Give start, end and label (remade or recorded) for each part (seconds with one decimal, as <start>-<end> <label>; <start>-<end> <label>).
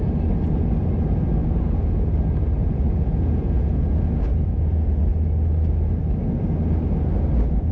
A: 0.0-1.4 recorded; 1.4-1.9 remade; 1.9-2.6 recorded; 2.6-5.0 remade; 5.0-7.7 recorded